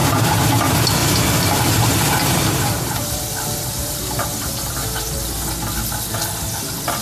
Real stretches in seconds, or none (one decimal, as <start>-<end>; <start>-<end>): 0.5-1.0; 5.2-7.0